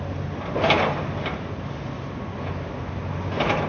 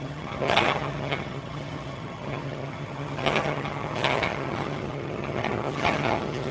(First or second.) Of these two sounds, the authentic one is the first